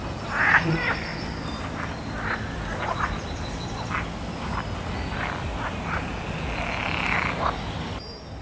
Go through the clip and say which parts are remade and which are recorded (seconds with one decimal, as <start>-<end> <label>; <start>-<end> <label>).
0.0-1.1 recorded; 1.1-3.9 remade; 3.9-8.4 recorded